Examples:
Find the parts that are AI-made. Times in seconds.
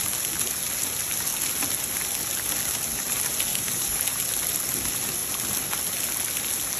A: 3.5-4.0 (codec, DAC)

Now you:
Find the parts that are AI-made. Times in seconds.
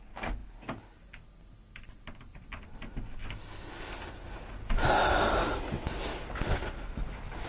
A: none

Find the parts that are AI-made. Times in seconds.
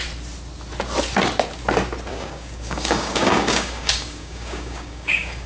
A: 2.1-5.5 (codec, DAC)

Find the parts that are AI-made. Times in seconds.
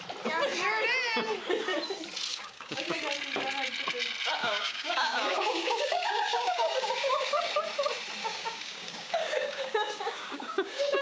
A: 2.3-3.0 (codec, DAC); 4.4-7.4; 8.2-11.0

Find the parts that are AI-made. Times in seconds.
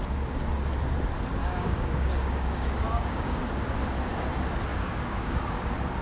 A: 1.4-3.4 (codec, DAC); 4.7-5.4